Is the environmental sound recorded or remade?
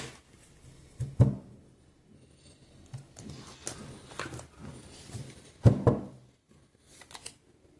recorded